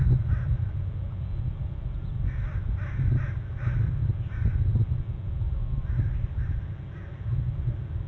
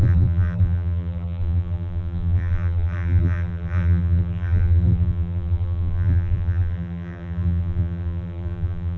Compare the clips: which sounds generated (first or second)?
second